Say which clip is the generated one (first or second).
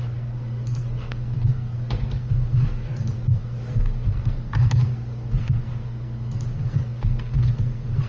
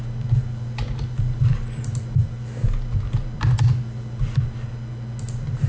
first